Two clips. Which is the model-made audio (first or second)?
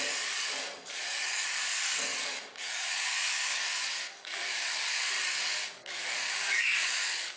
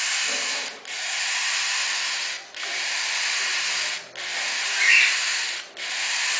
first